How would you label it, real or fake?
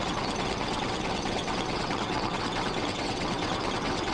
fake